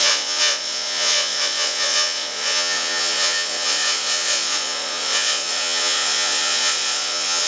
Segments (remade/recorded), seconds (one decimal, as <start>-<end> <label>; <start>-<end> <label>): 0.0-7.5 remade